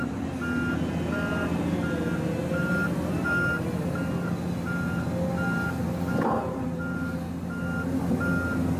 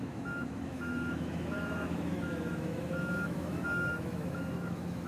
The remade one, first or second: second